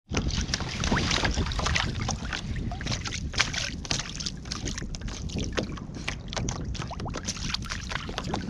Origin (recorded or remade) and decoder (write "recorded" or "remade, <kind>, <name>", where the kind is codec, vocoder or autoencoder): recorded